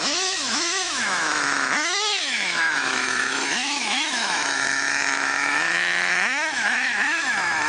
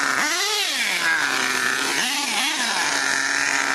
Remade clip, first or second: first